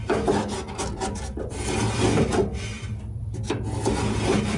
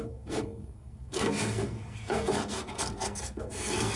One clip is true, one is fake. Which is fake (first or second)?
second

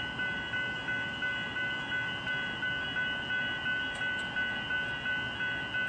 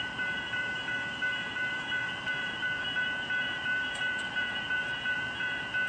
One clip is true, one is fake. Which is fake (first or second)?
second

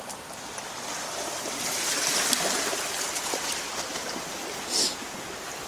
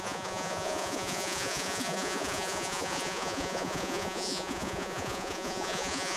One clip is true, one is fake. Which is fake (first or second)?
second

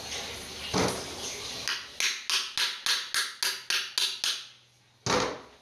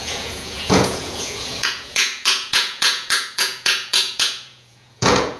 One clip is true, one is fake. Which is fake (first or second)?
second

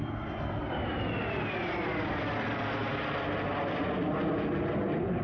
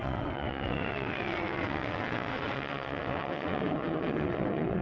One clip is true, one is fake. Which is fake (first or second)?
second